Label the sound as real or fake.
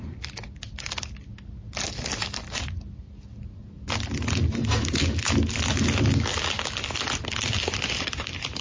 real